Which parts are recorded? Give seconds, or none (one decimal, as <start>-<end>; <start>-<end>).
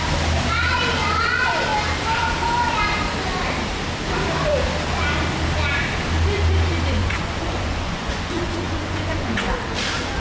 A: 0.0-7.0; 9.5-10.2